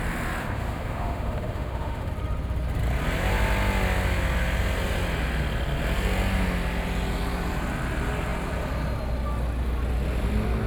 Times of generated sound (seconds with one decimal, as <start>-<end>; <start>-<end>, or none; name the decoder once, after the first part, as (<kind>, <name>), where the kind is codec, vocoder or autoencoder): 0.4-2.1 (autoencoder, DAC-VAE)

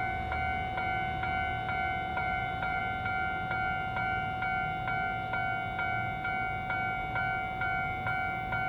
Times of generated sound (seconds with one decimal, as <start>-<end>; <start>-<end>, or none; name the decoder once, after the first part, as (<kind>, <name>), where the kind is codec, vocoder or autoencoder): 2.1-2.8 (vocoder, BigVGAN v2)

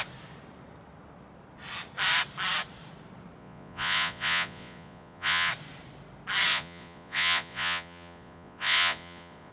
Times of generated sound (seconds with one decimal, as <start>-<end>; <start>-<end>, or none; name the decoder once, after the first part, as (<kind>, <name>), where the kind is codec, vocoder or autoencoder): 3.4-5.5 (vocoder, Vocos); 6.5-9.5

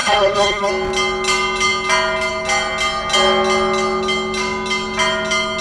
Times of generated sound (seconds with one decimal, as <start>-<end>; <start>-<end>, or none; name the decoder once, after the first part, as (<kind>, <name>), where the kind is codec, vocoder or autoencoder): 0.0-0.7 (codec, SNAC)

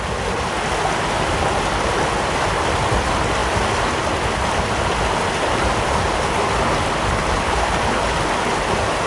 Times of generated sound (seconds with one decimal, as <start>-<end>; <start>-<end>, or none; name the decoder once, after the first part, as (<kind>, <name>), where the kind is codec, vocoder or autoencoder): none

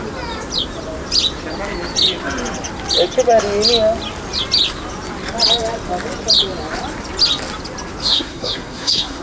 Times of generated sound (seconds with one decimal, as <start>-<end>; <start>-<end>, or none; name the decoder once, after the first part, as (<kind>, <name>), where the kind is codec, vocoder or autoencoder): 8.0-9.2 (codec, SNAC)